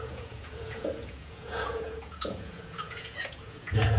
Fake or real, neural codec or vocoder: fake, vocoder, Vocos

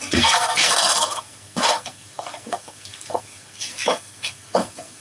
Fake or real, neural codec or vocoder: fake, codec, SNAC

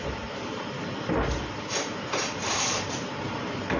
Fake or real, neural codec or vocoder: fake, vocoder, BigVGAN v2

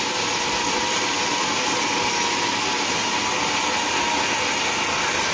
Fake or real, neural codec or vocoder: real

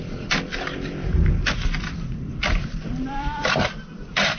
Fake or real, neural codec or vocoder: fake, vocoder, BigVGAN v2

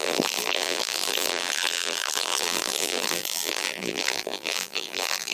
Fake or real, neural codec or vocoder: fake, vocoder, BigVGAN v2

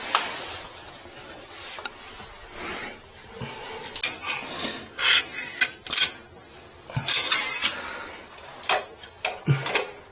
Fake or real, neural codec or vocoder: real